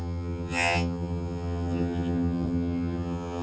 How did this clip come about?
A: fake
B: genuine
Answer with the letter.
A